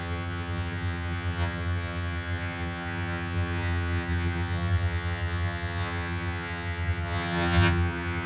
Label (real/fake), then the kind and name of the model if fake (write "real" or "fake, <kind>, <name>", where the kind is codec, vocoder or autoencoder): fake, vocoder, HiFi-GAN